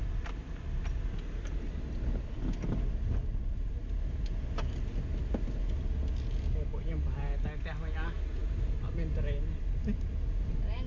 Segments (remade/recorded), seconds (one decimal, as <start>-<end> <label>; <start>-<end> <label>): 0.0-10.9 recorded